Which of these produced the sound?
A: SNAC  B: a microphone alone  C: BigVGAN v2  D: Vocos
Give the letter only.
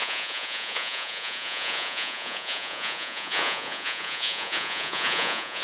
D